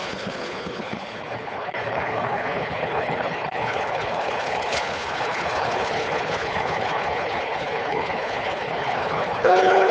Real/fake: fake